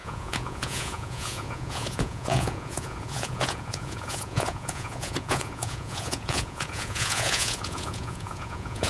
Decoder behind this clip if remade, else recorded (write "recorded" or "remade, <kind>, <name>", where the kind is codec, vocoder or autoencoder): remade, vocoder, Vocos